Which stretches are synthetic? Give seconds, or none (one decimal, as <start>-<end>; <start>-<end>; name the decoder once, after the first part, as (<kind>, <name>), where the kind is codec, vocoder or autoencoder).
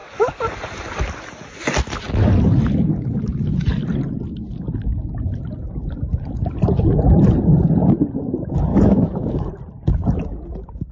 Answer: 8.7-9.5 (autoencoder, DAC-VAE)